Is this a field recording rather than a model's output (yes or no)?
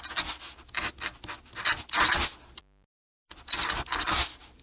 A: yes